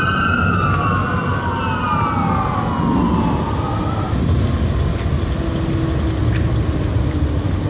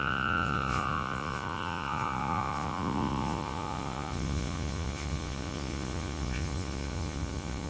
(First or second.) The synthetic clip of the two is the second